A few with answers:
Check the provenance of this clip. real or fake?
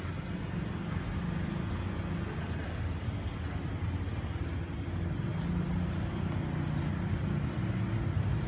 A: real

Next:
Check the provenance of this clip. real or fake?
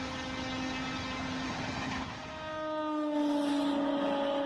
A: real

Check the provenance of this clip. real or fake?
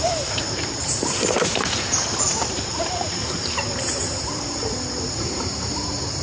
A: fake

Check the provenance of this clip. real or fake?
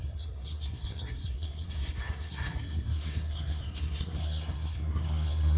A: fake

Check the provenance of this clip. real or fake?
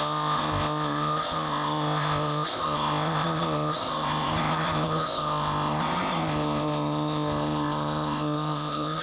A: fake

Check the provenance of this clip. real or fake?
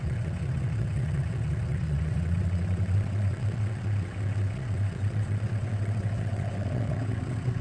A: fake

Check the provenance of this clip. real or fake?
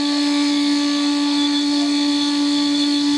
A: fake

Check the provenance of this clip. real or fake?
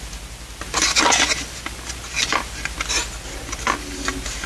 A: real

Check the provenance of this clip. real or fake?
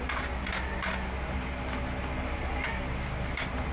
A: real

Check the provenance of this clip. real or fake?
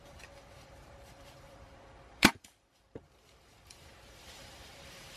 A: fake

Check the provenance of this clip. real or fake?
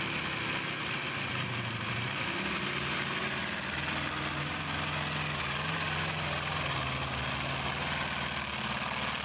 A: real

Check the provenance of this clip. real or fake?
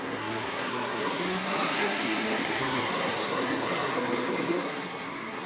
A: fake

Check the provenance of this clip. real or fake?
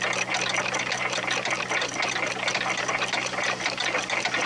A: real